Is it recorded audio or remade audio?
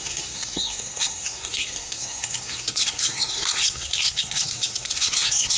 remade